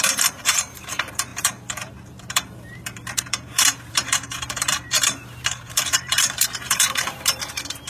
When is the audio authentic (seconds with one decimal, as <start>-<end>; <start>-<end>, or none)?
none